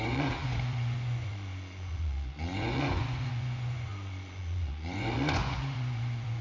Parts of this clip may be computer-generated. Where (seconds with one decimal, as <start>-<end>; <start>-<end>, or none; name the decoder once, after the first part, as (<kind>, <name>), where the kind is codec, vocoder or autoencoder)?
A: 0.0-6.4 (vocoder, Vocos)